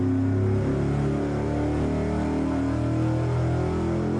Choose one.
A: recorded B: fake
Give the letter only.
A